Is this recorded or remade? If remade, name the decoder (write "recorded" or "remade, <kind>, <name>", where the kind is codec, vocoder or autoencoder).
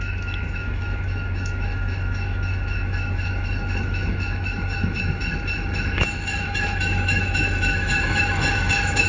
remade, autoencoder, DAC-VAE